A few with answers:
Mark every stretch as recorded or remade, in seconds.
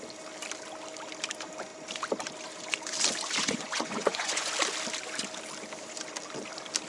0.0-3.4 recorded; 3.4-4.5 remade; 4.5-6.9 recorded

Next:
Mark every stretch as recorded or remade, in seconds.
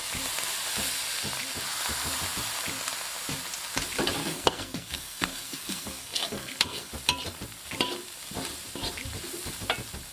0.0-4.2 recorded; 4.2-6.9 remade; 6.9-10.1 recorded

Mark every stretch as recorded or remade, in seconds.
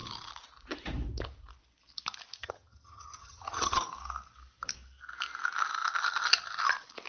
0.0-2.4 recorded; 2.4-3.8 remade; 3.8-7.1 recorded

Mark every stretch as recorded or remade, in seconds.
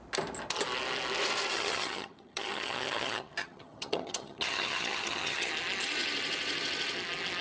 0.0-1.5 recorded; 1.5-5.5 remade; 5.5-7.4 recorded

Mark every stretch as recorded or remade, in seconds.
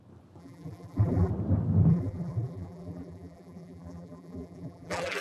0.0-0.4 recorded; 0.4-1.3 remade; 1.3-1.9 recorded; 1.9-5.2 remade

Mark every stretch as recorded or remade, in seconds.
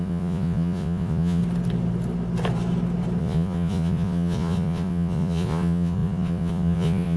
0.0-1.4 remade; 1.4-3.2 recorded; 3.2-7.2 remade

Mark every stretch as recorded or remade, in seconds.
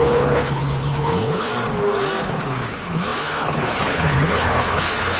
0.0-1.5 remade; 1.5-2.2 recorded; 2.2-5.2 remade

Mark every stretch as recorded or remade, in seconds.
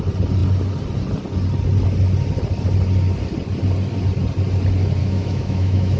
0.0-5.0 recorded; 5.0-6.0 remade